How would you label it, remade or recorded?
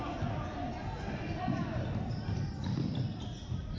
recorded